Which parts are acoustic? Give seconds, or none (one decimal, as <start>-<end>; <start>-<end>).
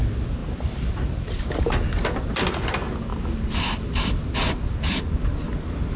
0.0-6.0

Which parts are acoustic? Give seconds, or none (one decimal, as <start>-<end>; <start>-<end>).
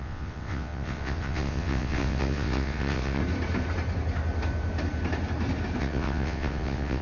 3.2-5.8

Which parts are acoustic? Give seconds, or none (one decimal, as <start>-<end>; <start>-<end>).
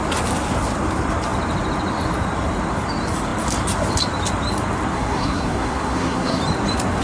0.0-4.9; 6.4-7.0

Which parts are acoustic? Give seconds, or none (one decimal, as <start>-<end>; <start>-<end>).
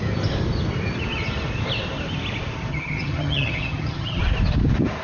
0.0-2.7; 4.2-5.0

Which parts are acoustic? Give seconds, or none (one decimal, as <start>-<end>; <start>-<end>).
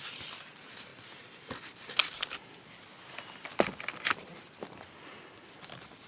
0.0-6.1